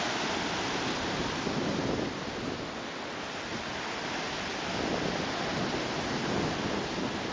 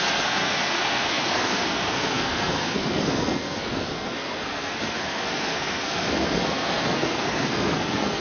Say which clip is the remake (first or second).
second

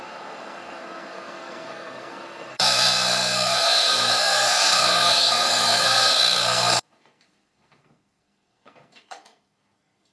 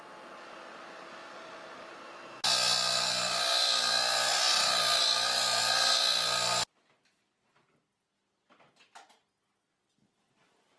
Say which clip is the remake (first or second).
first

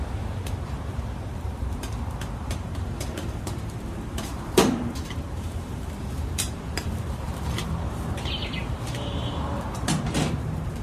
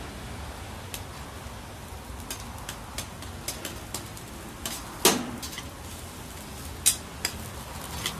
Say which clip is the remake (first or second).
first